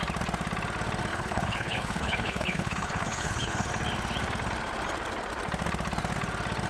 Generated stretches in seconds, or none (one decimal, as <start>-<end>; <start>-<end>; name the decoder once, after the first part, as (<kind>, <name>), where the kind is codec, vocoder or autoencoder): 1.1-3.7 (codec, HILCodec)